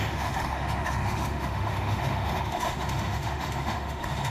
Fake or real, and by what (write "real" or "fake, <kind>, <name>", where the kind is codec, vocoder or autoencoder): fake, autoencoder, DAC-VAE